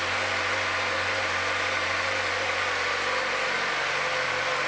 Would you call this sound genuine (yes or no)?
yes